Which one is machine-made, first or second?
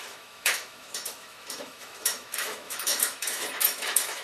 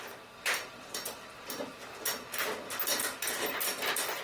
first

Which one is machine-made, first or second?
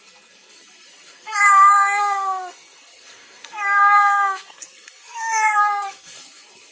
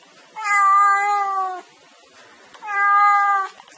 first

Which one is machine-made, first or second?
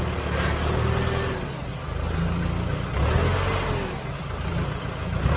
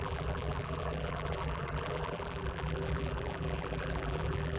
second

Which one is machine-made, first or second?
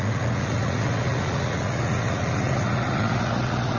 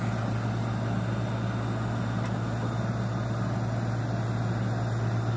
first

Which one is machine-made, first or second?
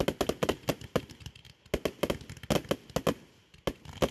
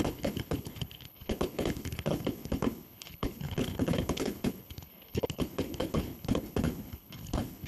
second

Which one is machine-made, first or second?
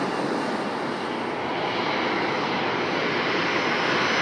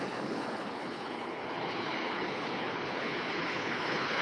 second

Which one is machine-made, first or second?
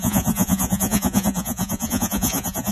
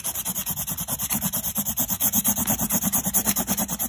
first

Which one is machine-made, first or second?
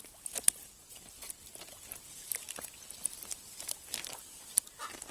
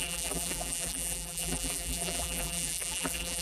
second